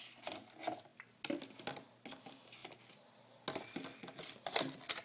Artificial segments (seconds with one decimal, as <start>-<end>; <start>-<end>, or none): none